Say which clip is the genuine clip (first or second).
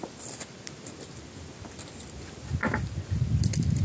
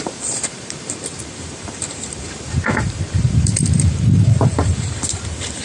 first